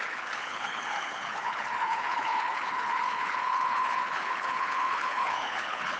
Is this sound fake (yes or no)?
yes